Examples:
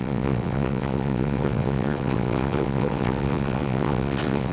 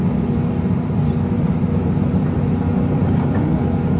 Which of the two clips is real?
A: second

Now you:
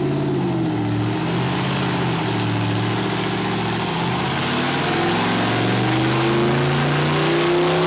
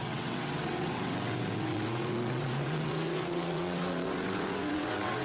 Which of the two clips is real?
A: first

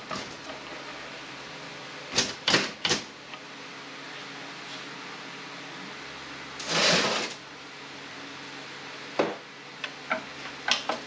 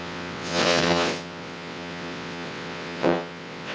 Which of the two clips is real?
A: first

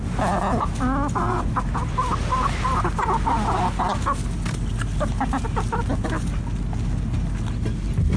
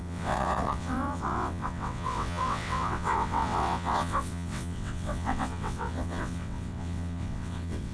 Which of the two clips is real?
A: first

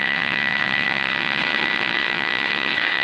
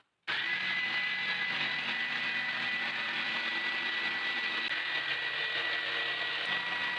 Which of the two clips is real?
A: second